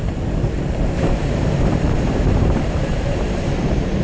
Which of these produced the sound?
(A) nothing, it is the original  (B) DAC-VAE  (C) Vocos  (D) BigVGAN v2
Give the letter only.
D